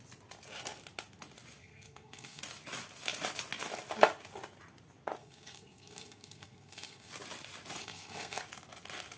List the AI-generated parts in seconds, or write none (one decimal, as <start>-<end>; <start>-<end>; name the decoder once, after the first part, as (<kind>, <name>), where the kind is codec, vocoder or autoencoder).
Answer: 1.6-2.4 (codec, SNAC); 5.2-7.1; 7.8-8.4